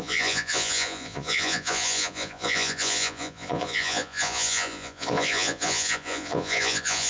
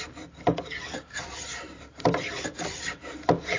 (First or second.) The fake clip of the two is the first